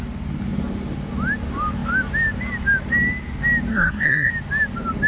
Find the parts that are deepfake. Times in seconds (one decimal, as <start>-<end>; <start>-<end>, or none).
3.7-4.3